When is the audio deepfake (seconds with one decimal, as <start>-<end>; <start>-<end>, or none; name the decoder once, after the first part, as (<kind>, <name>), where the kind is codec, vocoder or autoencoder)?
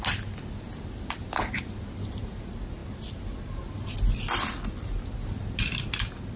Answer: none